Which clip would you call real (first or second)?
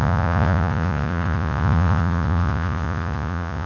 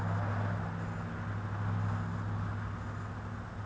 second